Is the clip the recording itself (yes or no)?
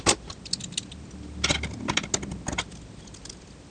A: yes